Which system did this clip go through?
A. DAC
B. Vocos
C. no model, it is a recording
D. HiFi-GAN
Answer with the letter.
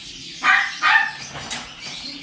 C